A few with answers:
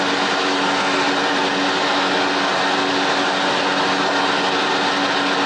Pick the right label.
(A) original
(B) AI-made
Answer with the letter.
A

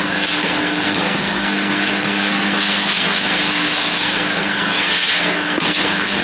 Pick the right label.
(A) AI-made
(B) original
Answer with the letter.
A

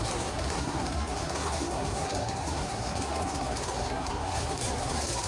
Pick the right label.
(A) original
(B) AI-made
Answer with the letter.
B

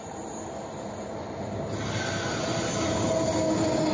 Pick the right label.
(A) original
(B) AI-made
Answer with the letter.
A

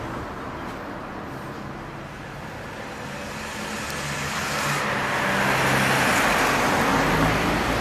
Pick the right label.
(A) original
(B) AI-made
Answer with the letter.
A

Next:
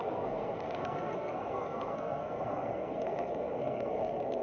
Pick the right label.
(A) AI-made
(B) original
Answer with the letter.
A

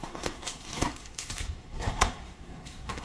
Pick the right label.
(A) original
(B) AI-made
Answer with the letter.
B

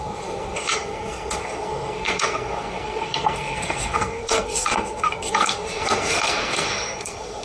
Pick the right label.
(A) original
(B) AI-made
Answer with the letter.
B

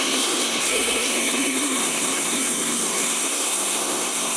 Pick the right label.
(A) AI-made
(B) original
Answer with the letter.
A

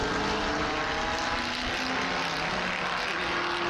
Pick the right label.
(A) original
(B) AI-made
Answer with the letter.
A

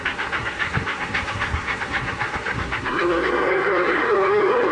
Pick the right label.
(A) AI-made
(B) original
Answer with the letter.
A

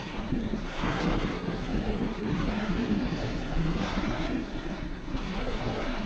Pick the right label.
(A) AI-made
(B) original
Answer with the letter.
A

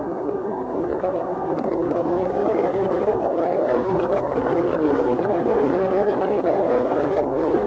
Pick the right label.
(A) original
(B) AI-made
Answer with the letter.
B